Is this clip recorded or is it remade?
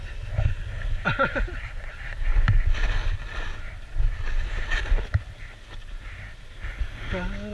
recorded